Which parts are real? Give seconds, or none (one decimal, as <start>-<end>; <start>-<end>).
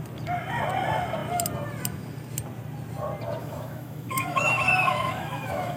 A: 0.0-3.4